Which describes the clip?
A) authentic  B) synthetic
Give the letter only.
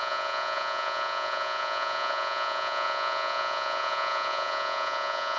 B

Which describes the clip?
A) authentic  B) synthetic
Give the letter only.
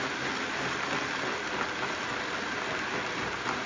A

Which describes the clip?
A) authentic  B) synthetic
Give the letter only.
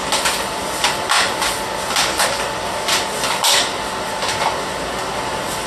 A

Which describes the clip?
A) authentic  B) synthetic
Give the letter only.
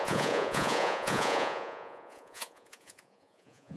B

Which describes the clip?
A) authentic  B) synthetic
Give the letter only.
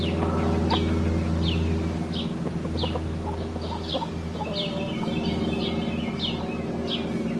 A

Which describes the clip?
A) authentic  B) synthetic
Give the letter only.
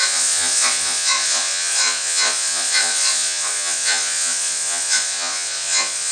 B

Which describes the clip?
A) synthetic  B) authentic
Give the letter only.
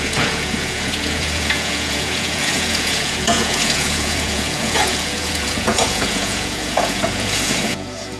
A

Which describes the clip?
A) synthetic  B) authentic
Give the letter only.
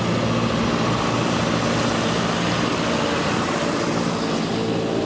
B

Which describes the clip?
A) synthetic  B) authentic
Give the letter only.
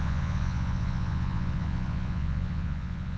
A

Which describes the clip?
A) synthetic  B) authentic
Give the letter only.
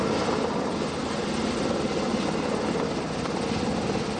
B